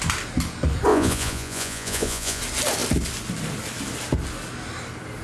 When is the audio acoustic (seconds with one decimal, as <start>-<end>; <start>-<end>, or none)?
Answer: 0.0-0.9; 2.4-5.2